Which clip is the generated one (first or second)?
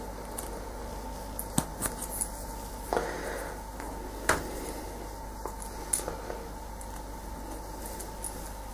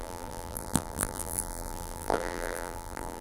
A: second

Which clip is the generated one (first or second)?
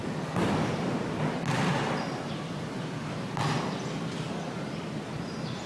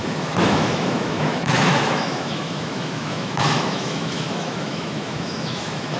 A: second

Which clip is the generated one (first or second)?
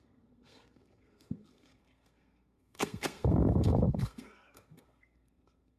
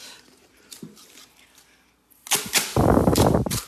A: first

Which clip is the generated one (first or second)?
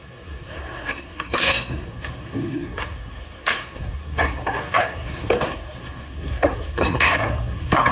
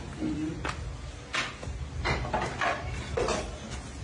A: first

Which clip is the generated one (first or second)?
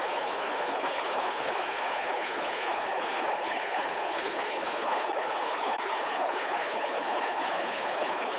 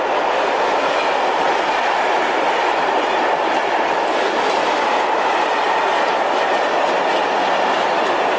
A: first